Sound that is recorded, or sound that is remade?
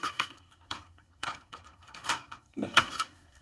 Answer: remade